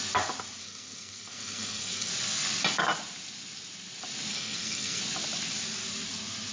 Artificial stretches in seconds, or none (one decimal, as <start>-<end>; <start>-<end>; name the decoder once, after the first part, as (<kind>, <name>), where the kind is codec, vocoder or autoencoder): 0.6-2.1 (codec, SNAC); 4.3-5.0